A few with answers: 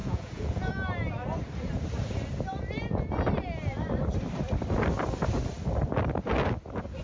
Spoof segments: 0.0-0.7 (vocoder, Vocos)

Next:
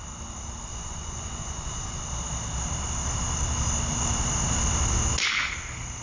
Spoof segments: 0.7-2.0 (vocoder, Vocos)